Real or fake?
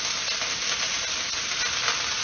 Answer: real